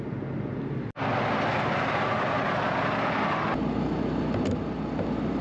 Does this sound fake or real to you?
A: real